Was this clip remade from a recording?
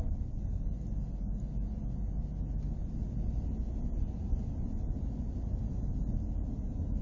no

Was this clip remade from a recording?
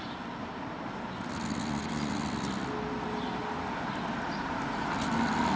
no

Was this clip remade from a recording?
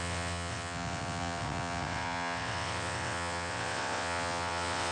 yes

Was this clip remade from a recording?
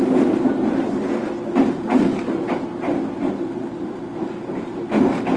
no